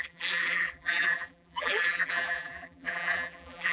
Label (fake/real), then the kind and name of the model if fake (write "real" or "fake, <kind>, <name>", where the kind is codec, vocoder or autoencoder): fake, vocoder, BigVGAN v2